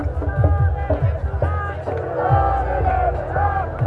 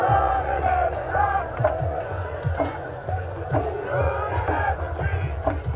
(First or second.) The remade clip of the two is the second